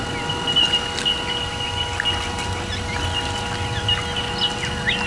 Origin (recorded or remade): recorded